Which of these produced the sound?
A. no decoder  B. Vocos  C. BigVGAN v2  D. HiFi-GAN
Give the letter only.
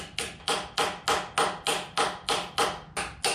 A